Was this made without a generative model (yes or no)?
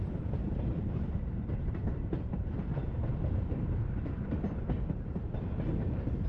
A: no